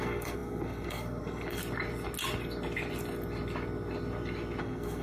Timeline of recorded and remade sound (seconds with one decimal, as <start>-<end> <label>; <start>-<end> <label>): 0.0-1.6 remade; 1.6-4.6 recorded; 4.6-5.0 remade